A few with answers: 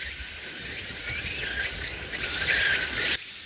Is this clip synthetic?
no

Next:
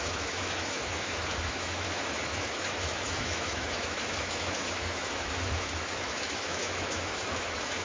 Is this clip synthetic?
yes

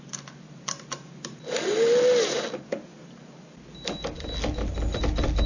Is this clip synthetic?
no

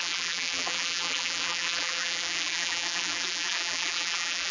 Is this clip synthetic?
yes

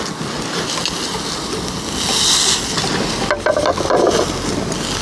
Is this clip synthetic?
no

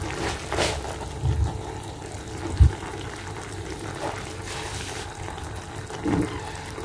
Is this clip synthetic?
no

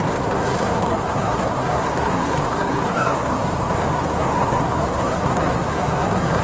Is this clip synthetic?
yes